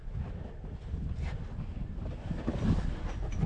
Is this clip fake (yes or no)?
no